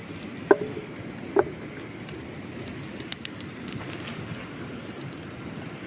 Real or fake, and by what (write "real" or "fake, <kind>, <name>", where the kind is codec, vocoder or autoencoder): real